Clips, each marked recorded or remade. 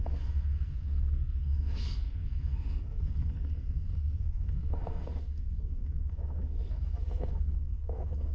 remade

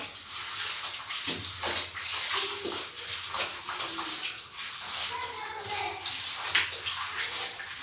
recorded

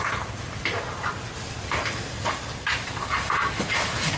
recorded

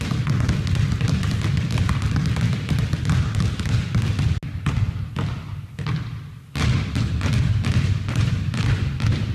recorded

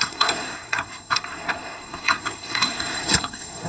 remade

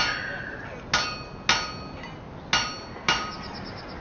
recorded